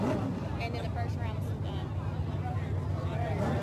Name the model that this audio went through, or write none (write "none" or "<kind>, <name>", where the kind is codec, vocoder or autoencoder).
none